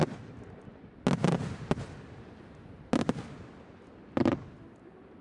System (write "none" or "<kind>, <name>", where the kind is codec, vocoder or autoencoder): none